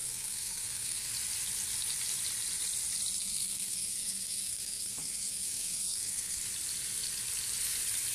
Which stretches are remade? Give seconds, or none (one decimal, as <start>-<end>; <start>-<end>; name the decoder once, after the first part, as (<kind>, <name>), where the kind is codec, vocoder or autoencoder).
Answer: 0.0-1.1 (codec, SNAC); 3.2-6.4